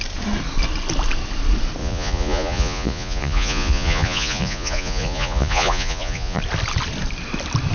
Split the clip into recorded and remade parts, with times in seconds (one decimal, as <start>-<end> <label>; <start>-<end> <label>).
0.0-1.8 recorded; 1.8-6.4 remade; 6.4-7.7 recorded